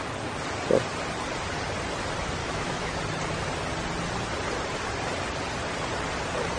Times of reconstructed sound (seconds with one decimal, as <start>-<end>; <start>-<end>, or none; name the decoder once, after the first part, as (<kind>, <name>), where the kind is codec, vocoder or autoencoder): 2.4-3.0 (autoencoder, DAC-VAE)